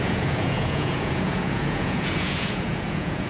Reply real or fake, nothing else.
fake